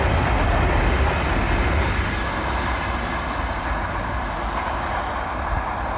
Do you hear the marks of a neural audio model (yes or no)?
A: no